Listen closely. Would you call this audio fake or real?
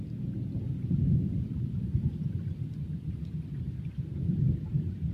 fake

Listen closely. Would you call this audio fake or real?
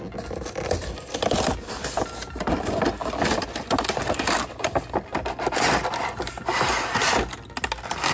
real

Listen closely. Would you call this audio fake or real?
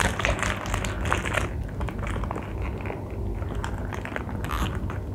real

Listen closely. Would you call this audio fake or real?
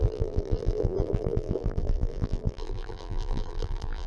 fake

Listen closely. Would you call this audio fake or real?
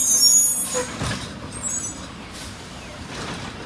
real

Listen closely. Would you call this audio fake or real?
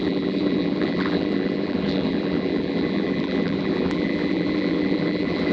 fake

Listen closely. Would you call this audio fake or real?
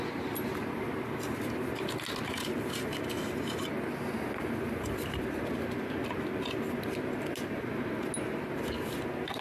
real